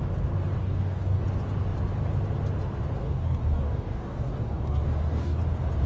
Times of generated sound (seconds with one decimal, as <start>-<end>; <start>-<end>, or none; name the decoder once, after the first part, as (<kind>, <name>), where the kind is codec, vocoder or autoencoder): 0.6-1.2 (codec, DAC); 3.0-5.4